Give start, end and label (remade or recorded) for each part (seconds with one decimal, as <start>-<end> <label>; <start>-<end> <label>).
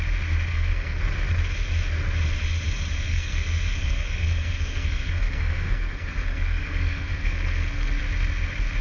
0.0-0.5 recorded; 0.5-1.0 remade; 1.0-2.9 recorded; 2.9-8.0 remade; 8.0-8.8 recorded